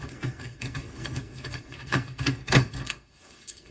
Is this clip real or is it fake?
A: fake